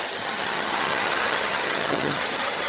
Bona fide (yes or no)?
no